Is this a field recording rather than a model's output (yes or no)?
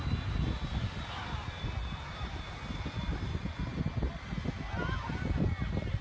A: yes